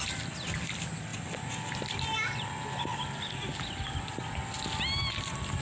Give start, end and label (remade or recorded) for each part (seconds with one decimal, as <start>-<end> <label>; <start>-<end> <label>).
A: 0.0-5.6 recorded